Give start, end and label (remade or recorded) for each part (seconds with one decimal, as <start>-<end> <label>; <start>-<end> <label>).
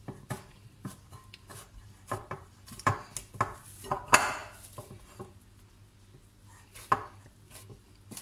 0.0-1.5 recorded; 1.5-2.9 remade; 2.9-8.2 recorded